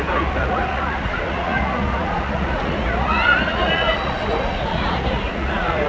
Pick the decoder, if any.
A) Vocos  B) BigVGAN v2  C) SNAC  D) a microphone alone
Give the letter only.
A